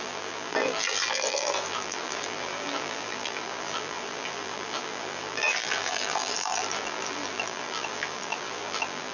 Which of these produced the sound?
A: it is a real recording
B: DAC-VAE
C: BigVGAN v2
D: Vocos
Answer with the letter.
C